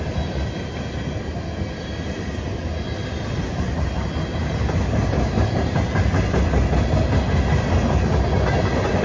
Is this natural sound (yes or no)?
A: yes